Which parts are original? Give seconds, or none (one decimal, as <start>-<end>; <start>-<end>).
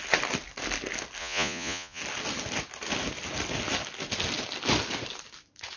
0.0-1.2; 2.0-5.8